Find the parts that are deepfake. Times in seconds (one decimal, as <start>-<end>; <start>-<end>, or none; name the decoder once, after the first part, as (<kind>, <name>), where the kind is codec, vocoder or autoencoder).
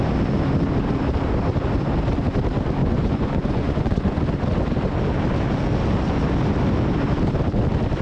2.8-4.2 (vocoder, Vocos)